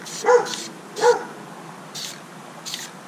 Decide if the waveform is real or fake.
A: real